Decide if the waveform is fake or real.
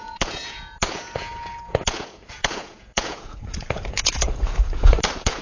fake